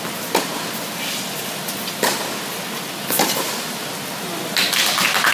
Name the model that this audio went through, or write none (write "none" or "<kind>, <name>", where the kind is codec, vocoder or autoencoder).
none